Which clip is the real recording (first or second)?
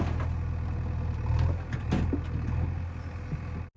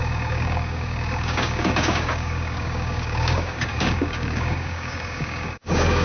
first